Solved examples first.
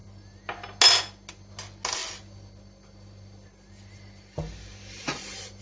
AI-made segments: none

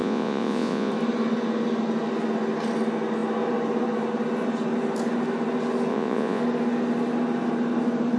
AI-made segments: 0.0-0.9 (vocoder, Vocos); 5.9-6.4

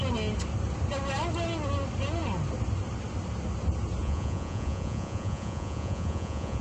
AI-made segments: 4.0-6.6 (vocoder, Vocos)

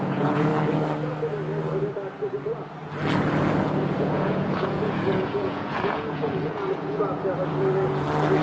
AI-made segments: 0.0-0.5 (vocoder, Vocos); 3.9-7.0

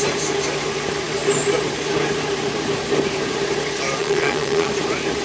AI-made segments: 4.0-4.7 (vocoder, Vocos)